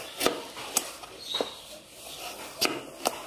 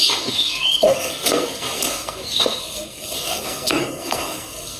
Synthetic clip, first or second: second